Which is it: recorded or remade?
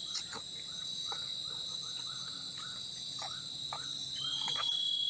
remade